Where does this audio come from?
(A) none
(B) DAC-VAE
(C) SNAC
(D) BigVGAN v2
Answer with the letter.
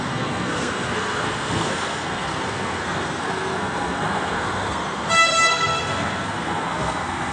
C